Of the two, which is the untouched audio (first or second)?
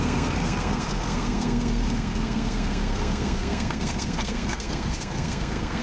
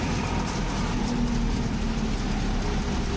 second